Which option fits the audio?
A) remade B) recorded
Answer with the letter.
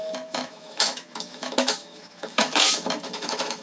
A